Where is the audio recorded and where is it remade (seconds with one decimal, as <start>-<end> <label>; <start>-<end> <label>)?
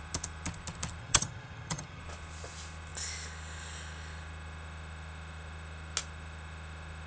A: 0.0-1.0 recorded; 1.0-2.0 remade; 2.0-7.1 recorded